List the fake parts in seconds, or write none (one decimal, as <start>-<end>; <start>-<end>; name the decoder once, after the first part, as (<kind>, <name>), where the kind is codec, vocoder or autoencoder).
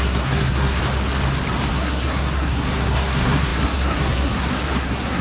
0.0-0.8 (codec, SNAC); 1.7-5.2